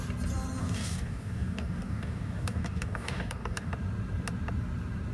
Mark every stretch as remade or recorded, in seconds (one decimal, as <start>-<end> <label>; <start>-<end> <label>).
0.0-0.6 recorded; 0.6-3.7 remade; 3.7-5.1 recorded